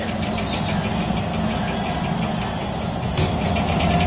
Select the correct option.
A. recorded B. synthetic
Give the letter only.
A